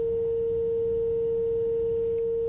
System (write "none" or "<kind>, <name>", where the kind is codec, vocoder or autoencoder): none